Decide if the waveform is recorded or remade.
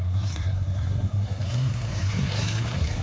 remade